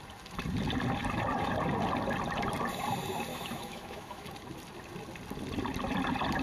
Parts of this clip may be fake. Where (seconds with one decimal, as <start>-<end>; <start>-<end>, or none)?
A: 3.3-4.3